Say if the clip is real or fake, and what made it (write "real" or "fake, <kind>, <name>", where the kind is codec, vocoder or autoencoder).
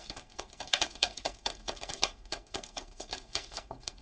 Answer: fake, codec, SNAC